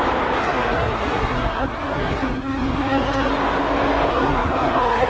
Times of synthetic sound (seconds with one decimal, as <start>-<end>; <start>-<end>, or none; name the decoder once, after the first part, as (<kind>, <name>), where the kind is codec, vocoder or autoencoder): 0.4-3.3 (codec, SNAC); 4.1-5.1